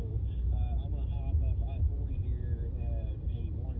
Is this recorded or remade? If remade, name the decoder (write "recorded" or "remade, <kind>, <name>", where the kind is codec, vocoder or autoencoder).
recorded